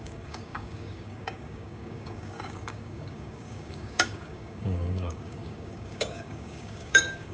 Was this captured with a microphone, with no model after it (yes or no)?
no